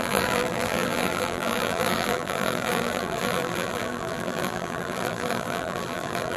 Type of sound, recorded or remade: remade